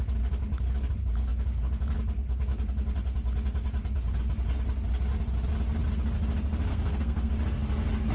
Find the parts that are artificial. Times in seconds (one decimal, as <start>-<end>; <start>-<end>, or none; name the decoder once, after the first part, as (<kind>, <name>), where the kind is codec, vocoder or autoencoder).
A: 6.7-7.3 (codec, SNAC)